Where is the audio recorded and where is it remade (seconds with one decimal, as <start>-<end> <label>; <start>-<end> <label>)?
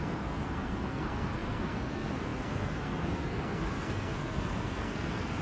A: 0.0-5.4 remade